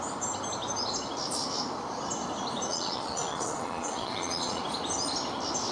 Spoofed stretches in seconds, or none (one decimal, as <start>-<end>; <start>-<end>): 2.7-4.6